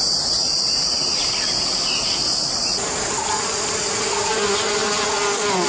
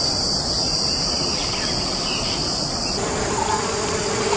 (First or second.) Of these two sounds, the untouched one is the first